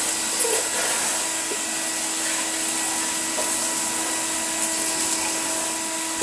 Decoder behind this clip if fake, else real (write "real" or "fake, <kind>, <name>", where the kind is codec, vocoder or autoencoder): real